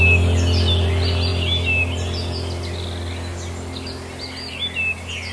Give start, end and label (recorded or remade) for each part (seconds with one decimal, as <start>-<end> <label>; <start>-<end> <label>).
0.0-5.3 recorded